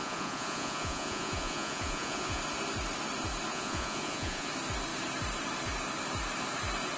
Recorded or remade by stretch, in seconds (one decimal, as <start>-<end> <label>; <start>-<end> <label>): 0.0-2.4 remade; 2.4-3.5 recorded; 3.5-4.5 remade; 4.5-7.0 recorded